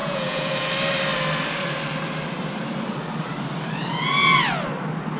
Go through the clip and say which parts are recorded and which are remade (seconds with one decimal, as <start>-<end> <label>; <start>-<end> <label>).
0.0-0.7 remade; 0.7-5.2 recorded